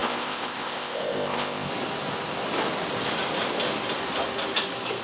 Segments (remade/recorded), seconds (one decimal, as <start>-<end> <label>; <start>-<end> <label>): 0.0-1.7 remade; 1.7-5.0 recorded